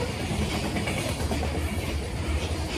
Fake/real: fake